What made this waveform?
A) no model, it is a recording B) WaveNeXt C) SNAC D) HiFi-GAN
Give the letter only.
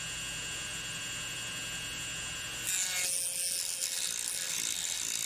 A